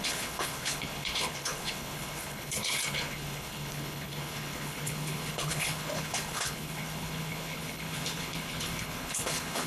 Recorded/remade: remade